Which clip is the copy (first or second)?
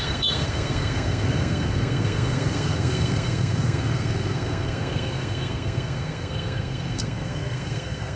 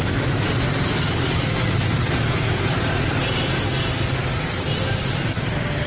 first